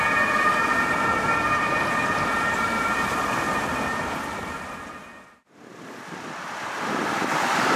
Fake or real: fake